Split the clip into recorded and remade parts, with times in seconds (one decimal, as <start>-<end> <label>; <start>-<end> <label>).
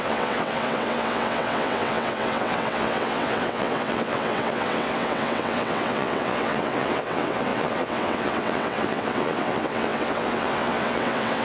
0.0-11.4 remade